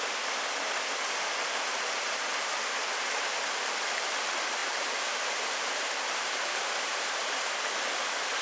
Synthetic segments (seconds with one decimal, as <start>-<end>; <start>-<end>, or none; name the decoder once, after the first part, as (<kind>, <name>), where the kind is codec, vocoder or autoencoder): 4.6-7.6 (vocoder, BigVGAN v2)